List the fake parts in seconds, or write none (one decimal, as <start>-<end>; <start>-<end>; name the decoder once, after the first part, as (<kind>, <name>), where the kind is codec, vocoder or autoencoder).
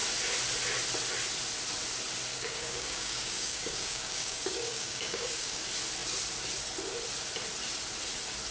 2.3-5.6 (codec, DAC)